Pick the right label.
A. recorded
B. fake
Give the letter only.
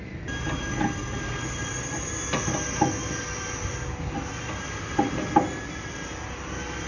A